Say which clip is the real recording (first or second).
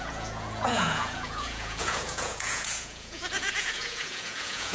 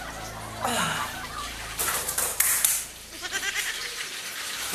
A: second